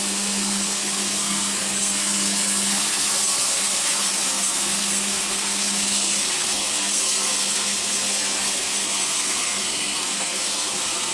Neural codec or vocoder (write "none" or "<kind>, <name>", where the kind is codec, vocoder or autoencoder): codec, SNAC